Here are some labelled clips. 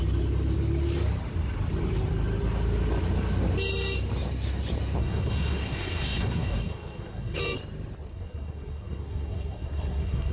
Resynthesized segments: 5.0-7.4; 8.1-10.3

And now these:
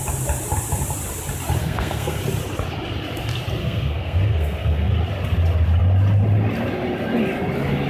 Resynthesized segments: 1.6-2.2; 3.6-4.9